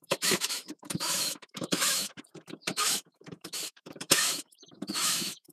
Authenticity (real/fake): fake